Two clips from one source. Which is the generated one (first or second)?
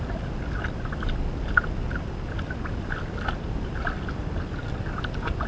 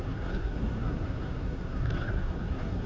second